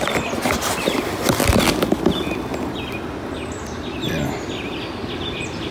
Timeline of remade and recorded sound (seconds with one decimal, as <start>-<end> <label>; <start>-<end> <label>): 0.0-5.7 recorded